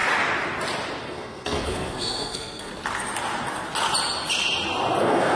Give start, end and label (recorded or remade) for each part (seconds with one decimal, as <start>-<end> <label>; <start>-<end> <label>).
0.0-1.0 recorded; 1.0-2.7 remade; 2.7-5.0 recorded; 5.0-5.4 remade